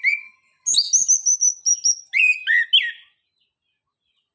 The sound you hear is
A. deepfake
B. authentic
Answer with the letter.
B